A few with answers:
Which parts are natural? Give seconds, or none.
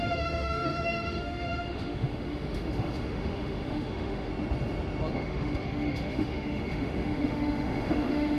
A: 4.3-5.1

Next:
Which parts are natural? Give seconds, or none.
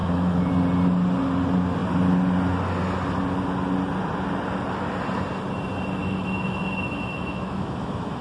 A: 0.5-6.0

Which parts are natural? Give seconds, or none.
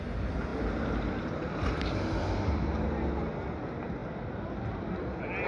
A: 0.0-5.5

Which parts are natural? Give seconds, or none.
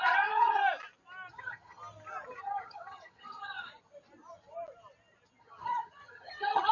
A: 0.6-1.3; 1.8-2.4; 3.7-5.4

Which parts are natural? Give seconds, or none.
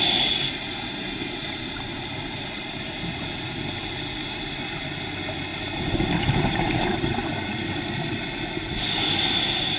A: 0.0-1.4; 3.4-5.5; 8.4-9.8